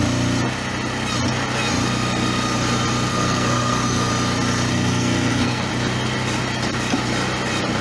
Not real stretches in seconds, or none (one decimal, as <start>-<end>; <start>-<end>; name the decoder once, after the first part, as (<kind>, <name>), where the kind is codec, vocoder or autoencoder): 3.1-4.1 (codec, SNAC); 4.7-5.6